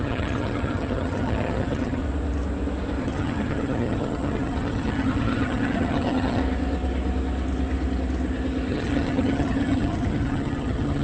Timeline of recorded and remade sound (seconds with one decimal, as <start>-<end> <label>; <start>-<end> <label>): 0.0-2.0 remade; 2.0-3.0 recorded; 3.0-6.4 remade; 6.4-8.7 recorded; 8.7-11.0 remade